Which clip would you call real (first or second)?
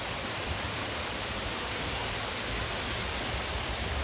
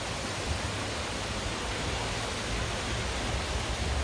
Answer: second